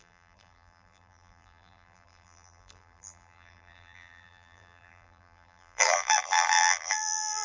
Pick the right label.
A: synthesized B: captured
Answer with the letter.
A